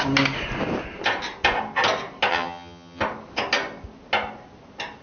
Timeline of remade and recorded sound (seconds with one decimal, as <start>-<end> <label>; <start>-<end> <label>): 0.0-2.3 recorded; 2.3-3.0 remade; 3.0-5.0 recorded